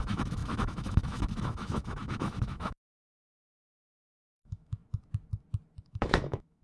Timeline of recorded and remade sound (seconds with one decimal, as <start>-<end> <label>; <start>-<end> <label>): 0.0-4.8 remade; 4.8-5.8 recorded; 5.8-6.6 remade